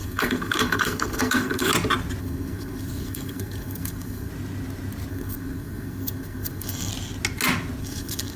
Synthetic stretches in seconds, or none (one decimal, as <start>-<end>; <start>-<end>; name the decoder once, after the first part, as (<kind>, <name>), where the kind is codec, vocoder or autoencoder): 0.0-1.7 (codec, SNAC); 2.2-4.3; 5.1-6.9; 7.8-8.4